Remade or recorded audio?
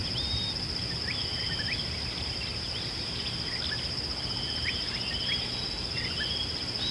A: recorded